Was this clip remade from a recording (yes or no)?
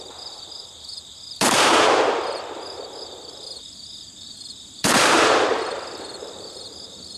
yes